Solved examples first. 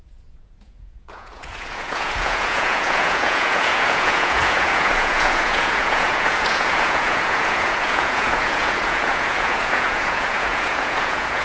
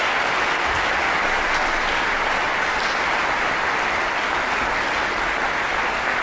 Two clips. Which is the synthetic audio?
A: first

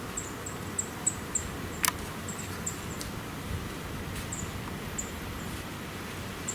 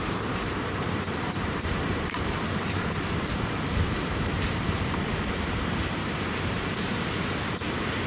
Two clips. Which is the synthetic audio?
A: second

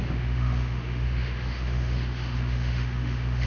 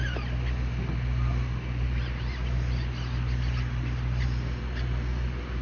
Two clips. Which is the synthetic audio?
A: first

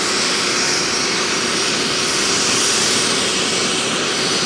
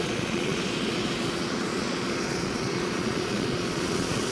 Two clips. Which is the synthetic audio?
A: second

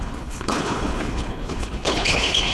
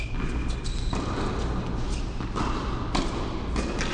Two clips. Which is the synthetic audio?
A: first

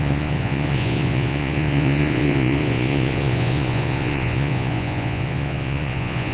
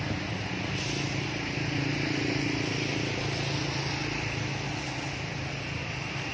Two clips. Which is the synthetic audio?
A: first